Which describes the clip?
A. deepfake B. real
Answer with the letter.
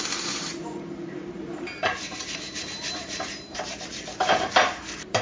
A